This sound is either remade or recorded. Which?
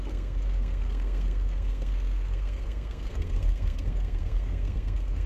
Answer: remade